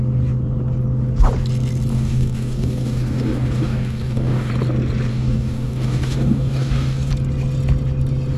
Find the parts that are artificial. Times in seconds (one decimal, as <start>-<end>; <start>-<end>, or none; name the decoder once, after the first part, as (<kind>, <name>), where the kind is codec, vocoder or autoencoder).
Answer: 1.9-4.5 (codec, DAC); 5.1-7.1